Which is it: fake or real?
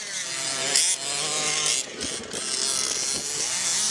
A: real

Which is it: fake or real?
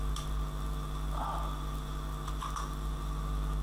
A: real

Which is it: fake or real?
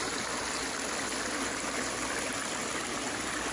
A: real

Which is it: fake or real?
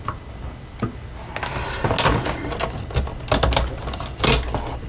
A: real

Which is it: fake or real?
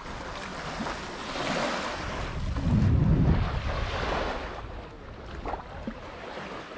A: real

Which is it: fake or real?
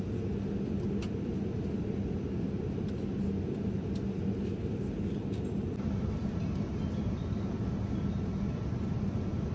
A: real